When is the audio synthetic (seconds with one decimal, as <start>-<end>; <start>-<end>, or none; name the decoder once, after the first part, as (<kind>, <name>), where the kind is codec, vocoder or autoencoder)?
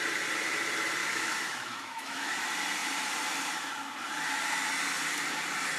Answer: 1.0-2.3 (autoencoder, DAC-VAE)